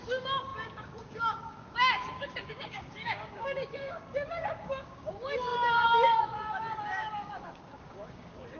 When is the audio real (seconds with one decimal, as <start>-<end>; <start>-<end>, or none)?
none